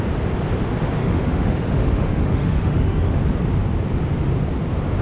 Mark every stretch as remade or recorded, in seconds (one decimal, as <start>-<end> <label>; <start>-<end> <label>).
0.0-1.0 recorded; 1.0-3.2 remade; 3.2-5.0 recorded